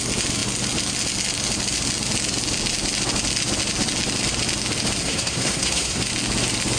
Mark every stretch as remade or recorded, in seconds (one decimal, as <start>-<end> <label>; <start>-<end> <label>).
0.0-5.0 recorded; 5.0-6.0 remade; 6.0-6.8 recorded